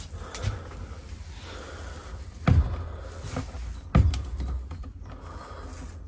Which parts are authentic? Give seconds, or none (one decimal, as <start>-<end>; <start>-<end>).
0.0-6.1